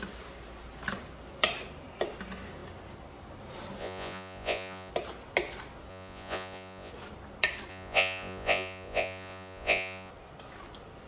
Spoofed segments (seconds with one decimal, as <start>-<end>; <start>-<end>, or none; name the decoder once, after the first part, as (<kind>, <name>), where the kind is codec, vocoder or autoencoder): 3.8-4.9 (vocoder, Vocos); 5.9-6.9; 7.7-10.1